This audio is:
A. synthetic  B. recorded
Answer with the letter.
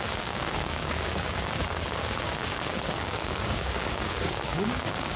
A